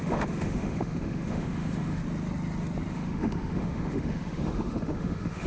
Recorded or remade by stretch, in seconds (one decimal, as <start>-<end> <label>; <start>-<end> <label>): 0.0-2.0 remade; 2.0-2.9 recorded; 2.9-5.5 remade